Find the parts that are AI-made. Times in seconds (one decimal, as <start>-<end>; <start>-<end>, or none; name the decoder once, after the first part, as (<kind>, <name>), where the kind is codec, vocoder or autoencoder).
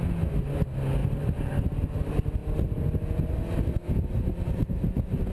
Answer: 1.0-1.6 (vocoder, BigVGAN v2)